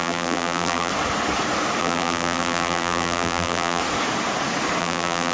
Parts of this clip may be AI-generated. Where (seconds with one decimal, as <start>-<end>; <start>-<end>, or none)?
0.0-0.9; 1.8-3.8; 4.8-5.3